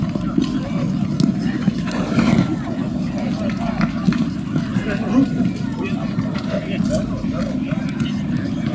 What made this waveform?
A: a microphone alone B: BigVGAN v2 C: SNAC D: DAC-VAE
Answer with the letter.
A